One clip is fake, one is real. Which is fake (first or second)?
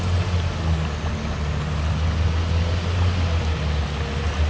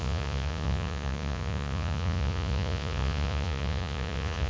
second